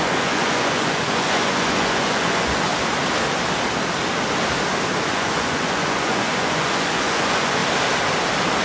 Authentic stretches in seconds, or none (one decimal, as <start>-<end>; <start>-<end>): 2.7-5.0; 7.6-8.6